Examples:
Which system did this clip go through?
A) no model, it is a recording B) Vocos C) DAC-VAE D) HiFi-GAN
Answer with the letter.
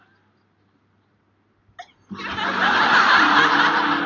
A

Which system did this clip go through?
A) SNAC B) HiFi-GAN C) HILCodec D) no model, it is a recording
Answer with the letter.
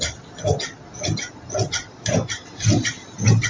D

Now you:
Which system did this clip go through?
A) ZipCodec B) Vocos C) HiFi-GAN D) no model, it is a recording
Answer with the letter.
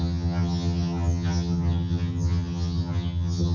C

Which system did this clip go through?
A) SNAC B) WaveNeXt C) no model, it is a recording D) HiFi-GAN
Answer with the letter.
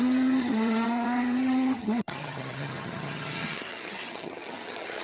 D